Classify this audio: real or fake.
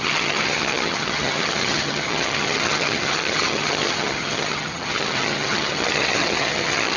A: fake